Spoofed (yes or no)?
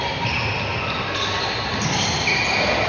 no